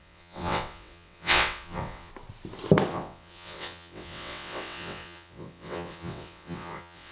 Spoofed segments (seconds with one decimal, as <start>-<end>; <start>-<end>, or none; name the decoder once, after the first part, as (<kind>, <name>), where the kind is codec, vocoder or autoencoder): 0.0-2.1 (vocoder, WaveNeXt); 2.9-7.1